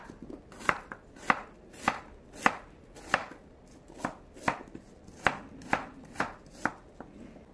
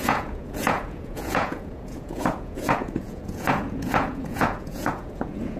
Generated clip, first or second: second